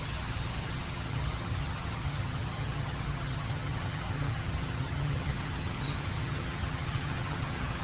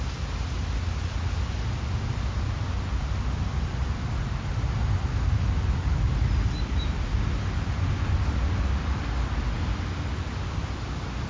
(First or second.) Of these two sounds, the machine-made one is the first